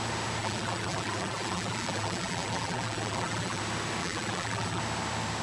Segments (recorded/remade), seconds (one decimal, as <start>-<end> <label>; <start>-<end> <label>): 0.0-0.4 recorded; 0.4-3.6 remade; 3.6-4.0 recorded; 4.0-4.8 remade; 4.8-5.4 recorded